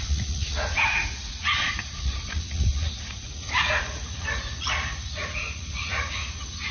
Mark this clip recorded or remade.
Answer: remade